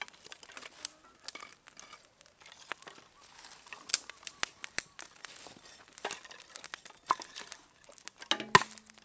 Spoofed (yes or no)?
no